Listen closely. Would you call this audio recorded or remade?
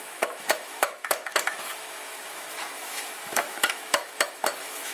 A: remade